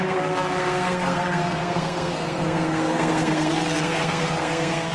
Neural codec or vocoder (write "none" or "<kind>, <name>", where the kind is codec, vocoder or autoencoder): codec, SNAC